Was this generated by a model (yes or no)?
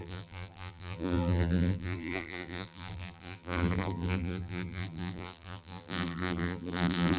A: yes